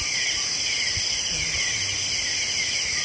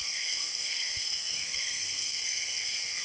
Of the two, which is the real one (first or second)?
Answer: first